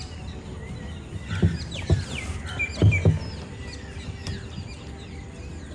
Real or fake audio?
real